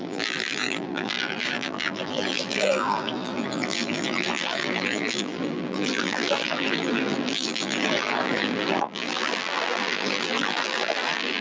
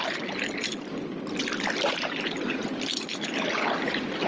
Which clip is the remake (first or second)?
first